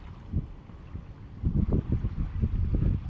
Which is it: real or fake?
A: real